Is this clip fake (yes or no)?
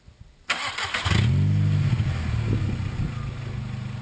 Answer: no